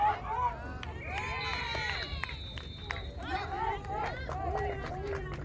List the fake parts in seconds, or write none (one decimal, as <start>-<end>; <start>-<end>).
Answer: none